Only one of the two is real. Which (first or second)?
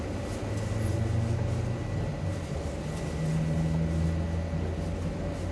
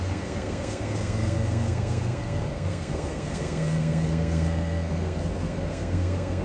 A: first